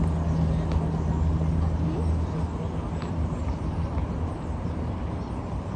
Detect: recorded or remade recorded